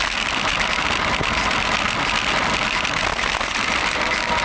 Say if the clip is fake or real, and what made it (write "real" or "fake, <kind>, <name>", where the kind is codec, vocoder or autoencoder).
real